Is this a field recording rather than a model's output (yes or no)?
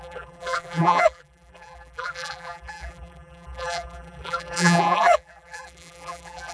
no